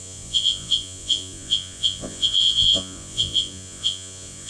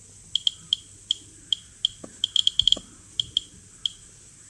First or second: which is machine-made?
first